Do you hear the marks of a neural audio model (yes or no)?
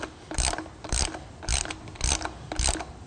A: no